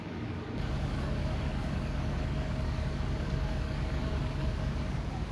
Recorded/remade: remade